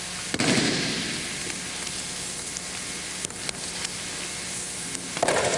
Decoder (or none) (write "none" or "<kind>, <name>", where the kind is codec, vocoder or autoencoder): none